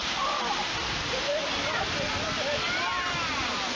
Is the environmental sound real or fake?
real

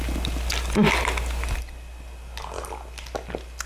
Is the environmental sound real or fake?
real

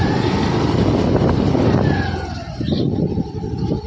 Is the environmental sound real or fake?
real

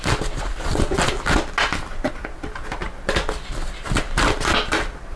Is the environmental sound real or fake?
real